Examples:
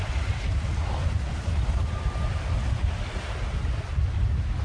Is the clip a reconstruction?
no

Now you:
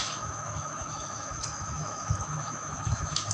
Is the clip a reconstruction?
yes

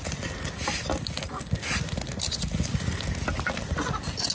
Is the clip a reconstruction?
no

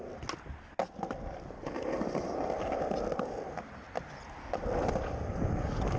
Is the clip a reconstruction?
no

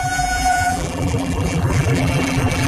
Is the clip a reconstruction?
yes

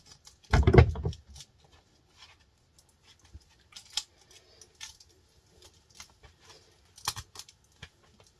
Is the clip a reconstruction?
no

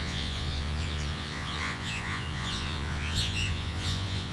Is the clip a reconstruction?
yes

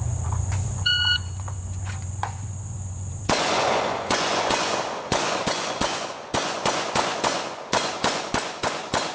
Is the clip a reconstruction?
yes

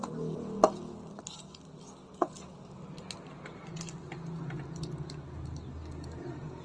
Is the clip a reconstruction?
no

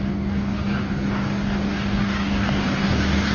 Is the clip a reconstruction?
yes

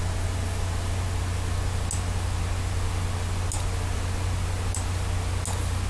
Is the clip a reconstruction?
no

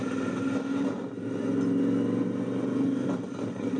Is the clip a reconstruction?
no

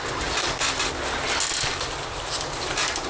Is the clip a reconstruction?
no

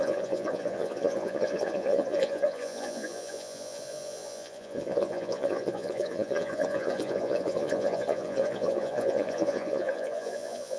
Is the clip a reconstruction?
yes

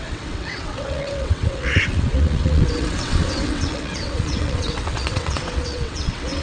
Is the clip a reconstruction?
yes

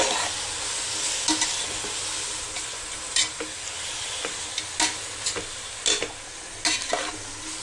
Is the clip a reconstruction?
no